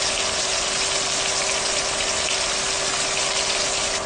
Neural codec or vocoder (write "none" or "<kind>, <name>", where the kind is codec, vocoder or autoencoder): none